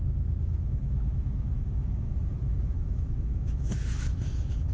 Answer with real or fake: fake